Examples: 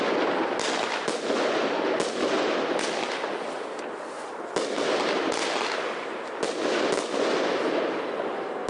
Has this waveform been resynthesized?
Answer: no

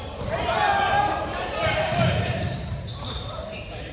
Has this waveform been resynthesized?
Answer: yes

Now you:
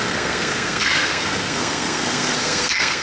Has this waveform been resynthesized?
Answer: yes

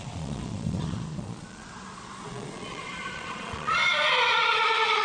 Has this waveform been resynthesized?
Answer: yes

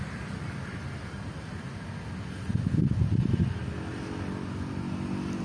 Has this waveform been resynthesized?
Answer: no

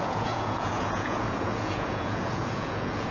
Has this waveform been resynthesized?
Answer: yes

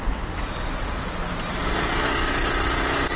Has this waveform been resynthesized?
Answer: no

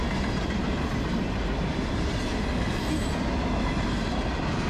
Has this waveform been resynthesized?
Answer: no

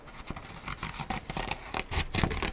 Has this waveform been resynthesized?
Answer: no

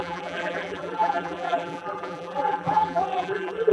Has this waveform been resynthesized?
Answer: yes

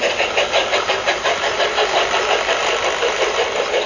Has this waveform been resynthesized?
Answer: no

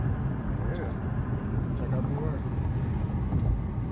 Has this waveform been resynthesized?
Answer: no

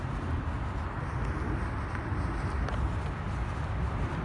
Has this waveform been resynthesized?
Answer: no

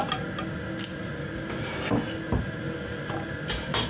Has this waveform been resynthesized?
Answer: no